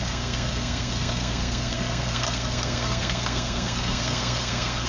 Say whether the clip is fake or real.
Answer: fake